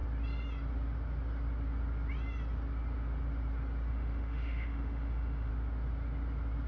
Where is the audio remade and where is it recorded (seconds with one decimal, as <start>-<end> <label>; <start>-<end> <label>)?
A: 0.0-3.9 recorded; 3.9-5.5 remade; 5.5-6.7 recorded